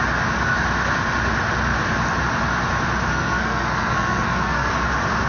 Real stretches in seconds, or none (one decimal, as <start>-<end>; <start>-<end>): 0.0-3.1; 4.7-5.3